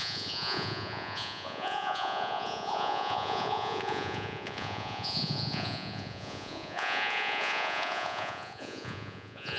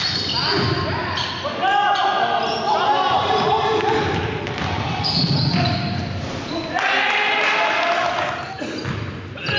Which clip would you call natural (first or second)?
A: second